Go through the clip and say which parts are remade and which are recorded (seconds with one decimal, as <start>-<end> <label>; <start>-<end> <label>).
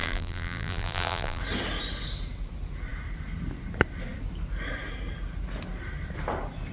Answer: 0.0-1.4 remade; 1.4-6.7 recorded